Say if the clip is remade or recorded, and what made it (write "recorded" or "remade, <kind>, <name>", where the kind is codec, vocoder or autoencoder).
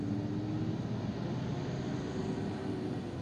recorded